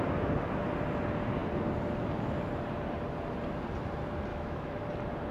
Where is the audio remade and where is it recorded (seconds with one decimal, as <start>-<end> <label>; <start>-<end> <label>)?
0.0-4.3 recorded; 4.3-4.8 remade; 4.8-5.3 recorded